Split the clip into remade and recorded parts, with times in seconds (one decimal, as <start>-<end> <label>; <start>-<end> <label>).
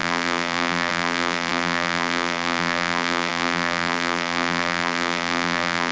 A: 0.0-5.9 remade